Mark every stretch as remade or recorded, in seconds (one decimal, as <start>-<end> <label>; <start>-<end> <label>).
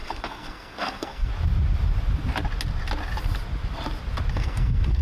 0.0-1.3 remade; 1.3-4.3 recorded; 4.3-5.0 remade